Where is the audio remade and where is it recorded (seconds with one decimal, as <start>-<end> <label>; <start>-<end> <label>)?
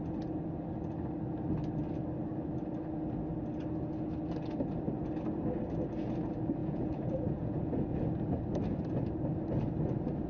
0.0-6.6 recorded; 6.6-7.7 remade; 7.7-10.3 recorded